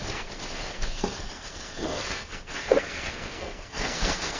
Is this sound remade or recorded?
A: remade